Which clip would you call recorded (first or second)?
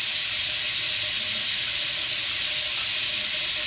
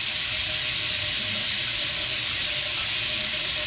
first